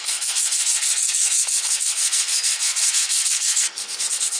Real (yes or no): no